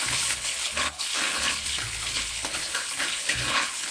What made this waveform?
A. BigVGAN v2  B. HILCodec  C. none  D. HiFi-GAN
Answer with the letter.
B